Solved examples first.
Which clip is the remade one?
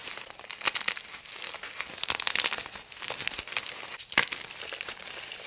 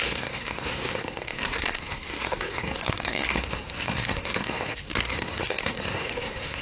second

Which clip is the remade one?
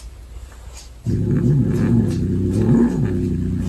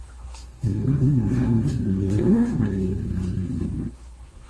second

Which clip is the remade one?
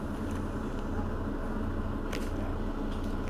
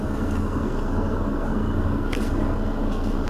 second